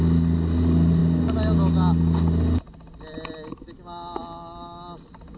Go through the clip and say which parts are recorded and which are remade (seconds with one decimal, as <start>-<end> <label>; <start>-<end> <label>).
0.0-5.4 recorded